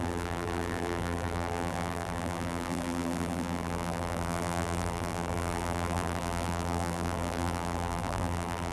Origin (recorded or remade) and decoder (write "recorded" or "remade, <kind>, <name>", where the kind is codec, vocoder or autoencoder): remade, vocoder, BigVGAN v2